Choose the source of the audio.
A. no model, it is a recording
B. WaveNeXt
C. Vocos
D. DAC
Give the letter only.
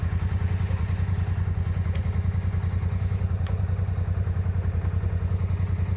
C